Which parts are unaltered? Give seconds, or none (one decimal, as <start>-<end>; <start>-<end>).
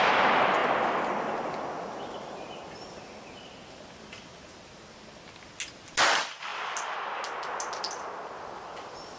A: 0.0-9.2